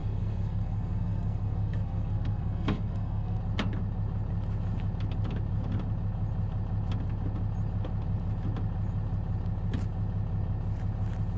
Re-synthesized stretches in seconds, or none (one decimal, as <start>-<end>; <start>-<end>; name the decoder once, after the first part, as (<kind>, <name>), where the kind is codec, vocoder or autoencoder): 0.0-3.4 (codec, SNAC)